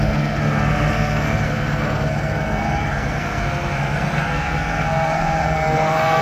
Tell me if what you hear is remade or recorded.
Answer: remade